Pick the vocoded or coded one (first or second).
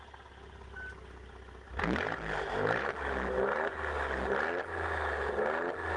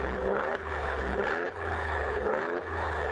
second